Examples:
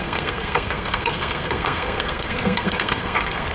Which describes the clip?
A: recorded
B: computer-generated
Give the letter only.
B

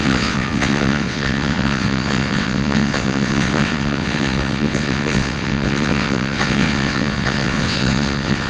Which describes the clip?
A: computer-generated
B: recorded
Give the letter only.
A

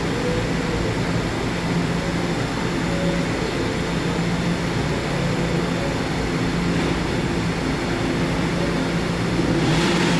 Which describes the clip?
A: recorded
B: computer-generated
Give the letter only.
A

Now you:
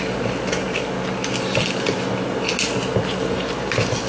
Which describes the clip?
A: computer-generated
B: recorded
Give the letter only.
B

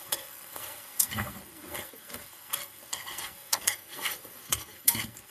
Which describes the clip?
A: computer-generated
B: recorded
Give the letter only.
A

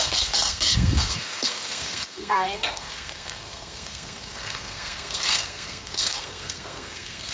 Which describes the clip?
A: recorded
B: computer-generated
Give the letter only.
B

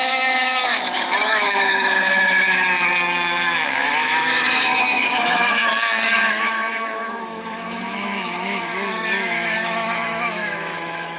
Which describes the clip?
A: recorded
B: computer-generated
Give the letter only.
B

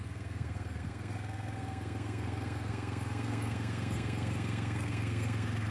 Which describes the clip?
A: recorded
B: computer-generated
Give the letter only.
B